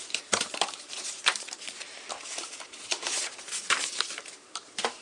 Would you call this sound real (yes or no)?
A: no